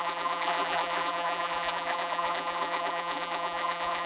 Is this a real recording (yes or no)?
no